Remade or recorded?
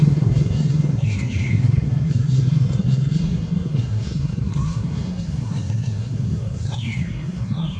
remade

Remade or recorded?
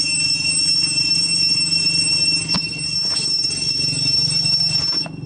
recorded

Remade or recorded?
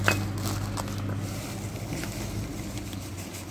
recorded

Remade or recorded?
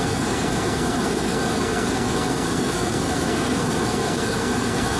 remade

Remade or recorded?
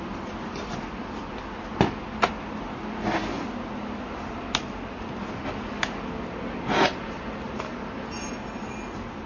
recorded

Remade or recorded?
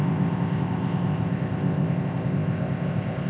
remade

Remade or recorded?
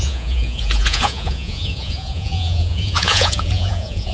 remade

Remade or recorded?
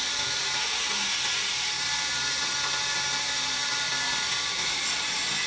recorded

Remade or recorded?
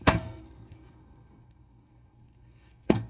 remade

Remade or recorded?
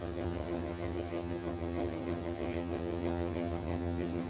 remade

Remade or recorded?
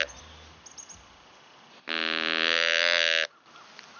recorded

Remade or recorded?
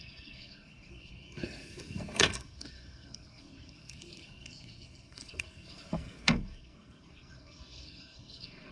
remade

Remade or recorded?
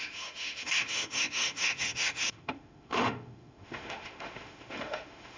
remade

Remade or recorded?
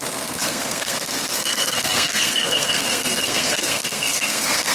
remade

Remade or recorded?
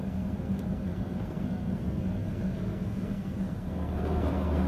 remade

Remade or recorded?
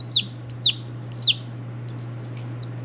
recorded